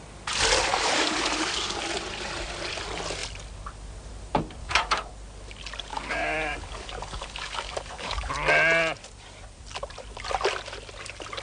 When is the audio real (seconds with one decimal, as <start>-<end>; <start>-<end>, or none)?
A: 0.0-0.7; 1.8-4.6; 5.1-5.9; 8.3-11.4